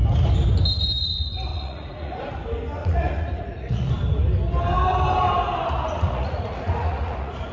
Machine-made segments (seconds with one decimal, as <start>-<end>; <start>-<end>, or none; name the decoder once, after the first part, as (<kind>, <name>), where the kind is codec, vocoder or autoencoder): 1.5-2.2 (vocoder, Vocos); 2.8-3.9; 5.9-7.5